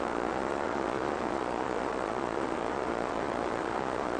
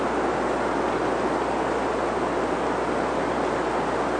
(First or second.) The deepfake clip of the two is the first